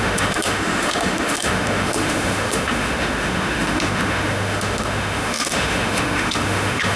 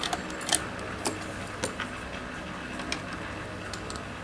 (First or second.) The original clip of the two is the second